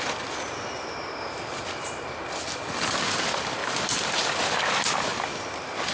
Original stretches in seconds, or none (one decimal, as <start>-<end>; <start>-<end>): 0.0-5.9